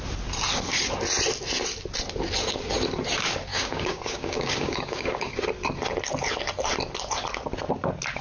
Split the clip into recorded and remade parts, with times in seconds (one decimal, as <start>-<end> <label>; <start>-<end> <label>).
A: 0.0-3.5 recorded; 3.5-5.3 remade; 5.3-8.2 recorded